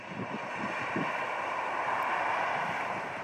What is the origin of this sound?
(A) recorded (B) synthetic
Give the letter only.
A